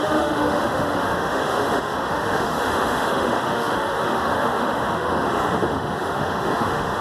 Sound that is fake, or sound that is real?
fake